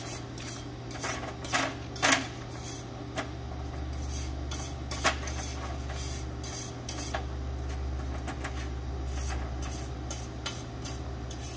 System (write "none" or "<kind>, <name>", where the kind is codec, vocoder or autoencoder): none